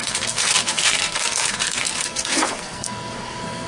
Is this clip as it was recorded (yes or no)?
no